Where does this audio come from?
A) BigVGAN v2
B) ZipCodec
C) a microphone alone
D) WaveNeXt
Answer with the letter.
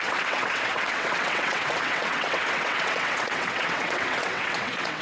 D